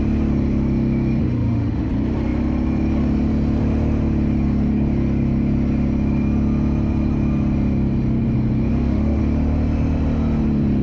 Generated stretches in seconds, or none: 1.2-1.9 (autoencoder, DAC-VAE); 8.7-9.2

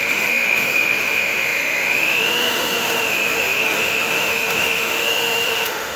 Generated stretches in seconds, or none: 0.0-6.0 (autoencoder, DAC-VAE)

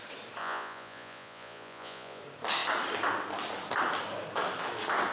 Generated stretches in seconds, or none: 0.4-2.2 (vocoder, Vocos)

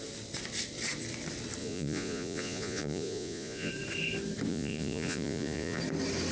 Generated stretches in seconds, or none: 1.6-3.7 (vocoder, Vocos); 4.5-5.8

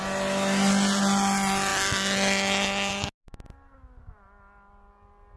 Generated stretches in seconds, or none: none